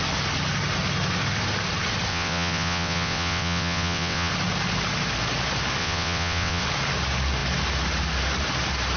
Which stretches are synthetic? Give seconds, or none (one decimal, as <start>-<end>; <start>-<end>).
2.1-4.3; 5.8-6.6

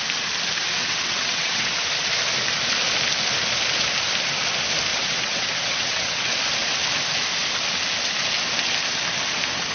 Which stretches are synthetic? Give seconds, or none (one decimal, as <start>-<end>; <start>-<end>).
0.8-1.7; 4.9-6.3